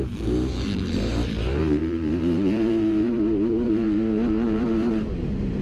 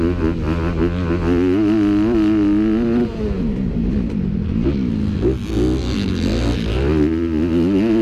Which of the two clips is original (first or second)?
second